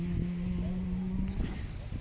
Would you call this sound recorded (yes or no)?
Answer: yes